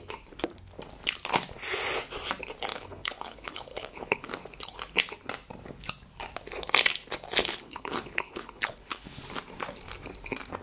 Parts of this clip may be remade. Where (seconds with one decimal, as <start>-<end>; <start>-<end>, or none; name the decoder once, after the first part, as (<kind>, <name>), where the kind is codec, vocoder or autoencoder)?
2.7-4.3 (codec, HILCodec); 7.4-9.2